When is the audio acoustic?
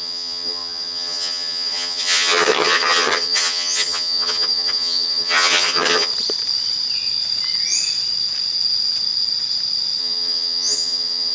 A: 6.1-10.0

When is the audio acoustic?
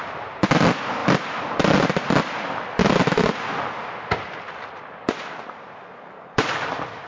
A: 0.0-7.1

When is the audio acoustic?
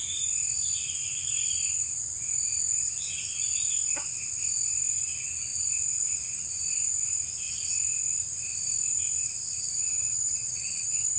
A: 0.0-9.8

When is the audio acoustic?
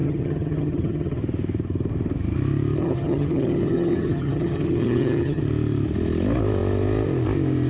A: 1.2-2.8; 5.4-7.7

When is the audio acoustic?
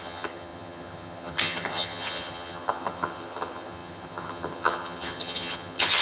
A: none